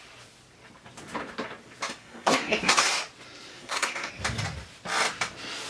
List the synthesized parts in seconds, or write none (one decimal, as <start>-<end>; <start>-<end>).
2.0-2.9; 3.5-4.1